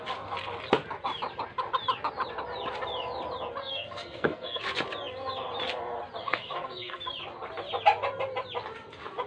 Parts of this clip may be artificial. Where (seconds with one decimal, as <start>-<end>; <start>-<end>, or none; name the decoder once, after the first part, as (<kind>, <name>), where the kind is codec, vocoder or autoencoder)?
3.6-4.6 (codec, SNAC); 6.2-7.0